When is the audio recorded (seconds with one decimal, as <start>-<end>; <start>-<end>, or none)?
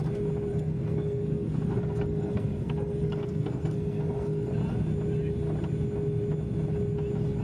0.0-0.5; 4.5-7.4